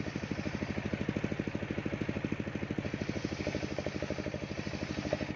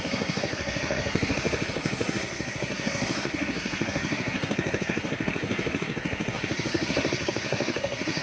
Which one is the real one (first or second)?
first